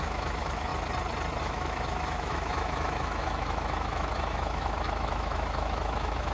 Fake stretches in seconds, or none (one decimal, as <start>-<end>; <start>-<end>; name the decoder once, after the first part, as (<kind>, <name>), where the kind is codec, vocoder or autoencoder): 0.0-0.7 (autoencoder, DAC-VAE); 1.4-6.3